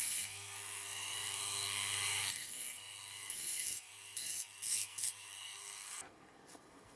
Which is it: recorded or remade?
remade